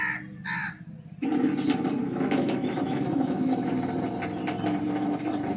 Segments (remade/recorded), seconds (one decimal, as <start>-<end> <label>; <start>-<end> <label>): 0.0-2.0 recorded; 2.0-3.7 remade; 3.7-5.6 recorded